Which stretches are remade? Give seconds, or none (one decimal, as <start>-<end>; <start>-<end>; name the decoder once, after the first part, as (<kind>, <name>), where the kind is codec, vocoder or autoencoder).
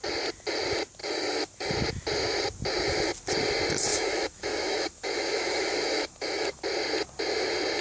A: 1.0-1.7 (autoencoder, DAC-VAE); 3.9-6.6